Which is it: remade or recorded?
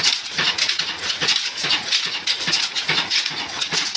remade